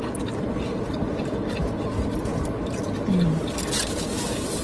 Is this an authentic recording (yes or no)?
yes